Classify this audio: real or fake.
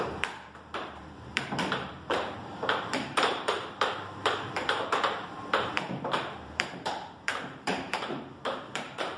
fake